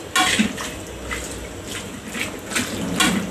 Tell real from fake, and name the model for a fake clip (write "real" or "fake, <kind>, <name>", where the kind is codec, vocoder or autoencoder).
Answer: real